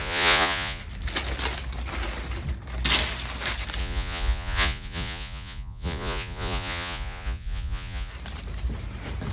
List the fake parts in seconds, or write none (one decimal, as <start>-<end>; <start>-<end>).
0.0-0.8; 3.8-8.1